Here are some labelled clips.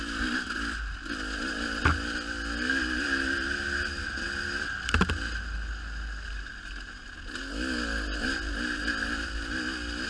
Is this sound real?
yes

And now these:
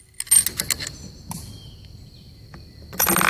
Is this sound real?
yes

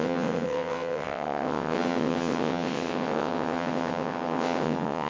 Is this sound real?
no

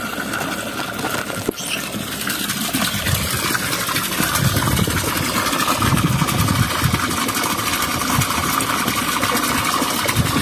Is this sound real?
yes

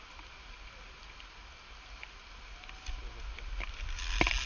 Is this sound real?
yes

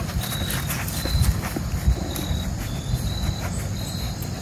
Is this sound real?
yes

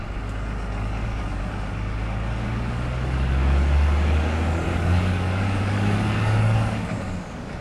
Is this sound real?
no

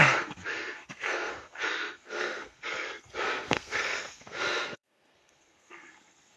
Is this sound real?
no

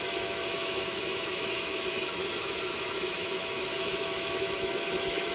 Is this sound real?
no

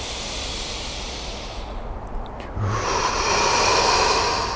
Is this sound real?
yes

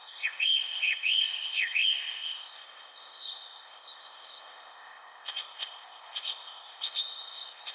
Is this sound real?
no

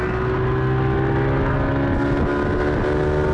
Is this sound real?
yes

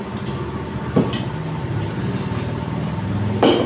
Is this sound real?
yes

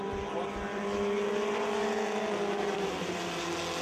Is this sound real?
yes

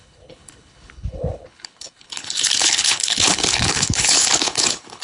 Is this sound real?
no